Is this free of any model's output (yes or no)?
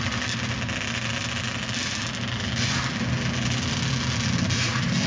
yes